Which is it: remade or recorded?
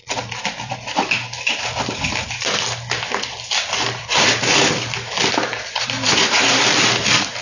remade